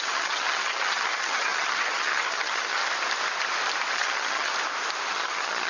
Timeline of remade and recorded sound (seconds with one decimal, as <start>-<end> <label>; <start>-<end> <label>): 0.0-2.8 remade; 2.8-3.9 recorded; 3.9-4.5 remade; 4.5-5.1 recorded; 5.1-5.7 remade